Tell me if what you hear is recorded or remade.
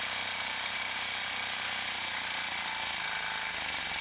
recorded